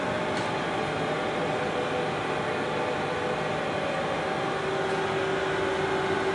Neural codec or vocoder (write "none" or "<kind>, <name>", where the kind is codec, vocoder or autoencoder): none